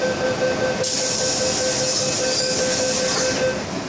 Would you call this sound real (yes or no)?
yes